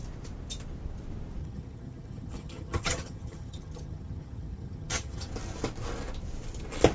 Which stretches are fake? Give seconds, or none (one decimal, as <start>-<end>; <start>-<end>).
1.4-5.3